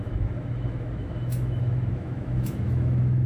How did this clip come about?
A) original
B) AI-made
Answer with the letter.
B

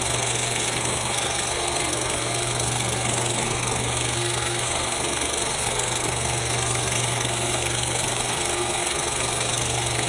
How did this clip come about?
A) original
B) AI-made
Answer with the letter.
B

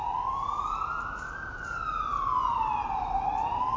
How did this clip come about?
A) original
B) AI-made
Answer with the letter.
A